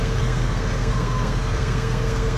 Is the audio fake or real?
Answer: fake